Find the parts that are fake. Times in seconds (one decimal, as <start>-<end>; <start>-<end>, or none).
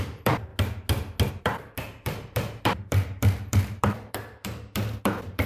0.0-0.5; 1.3-5.5